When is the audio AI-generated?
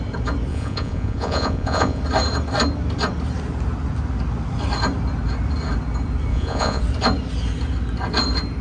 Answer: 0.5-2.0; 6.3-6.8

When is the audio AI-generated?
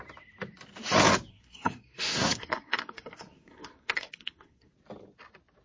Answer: 1.3-4.7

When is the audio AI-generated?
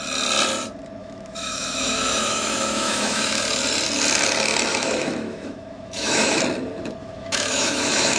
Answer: 1.0-3.4; 4.7-6.4; 7.0-8.2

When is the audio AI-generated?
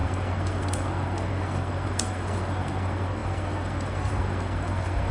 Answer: 0.0-5.1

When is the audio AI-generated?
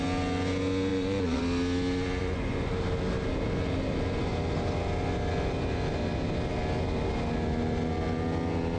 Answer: 0.9-1.4; 2.2-2.7